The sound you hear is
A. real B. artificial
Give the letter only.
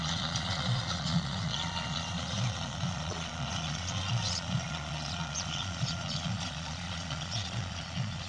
B